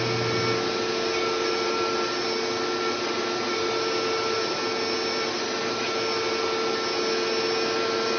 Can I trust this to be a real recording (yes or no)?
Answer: yes